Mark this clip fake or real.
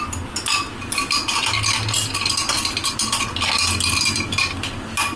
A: real